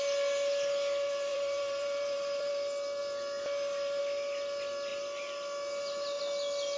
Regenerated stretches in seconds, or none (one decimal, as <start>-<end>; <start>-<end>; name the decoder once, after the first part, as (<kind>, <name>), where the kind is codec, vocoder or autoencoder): 1.3-2.5 (vocoder, BigVGAN v2)